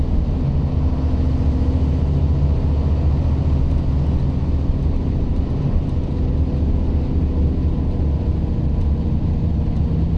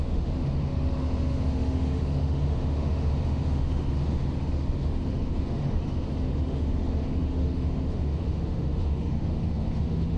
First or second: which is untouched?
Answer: first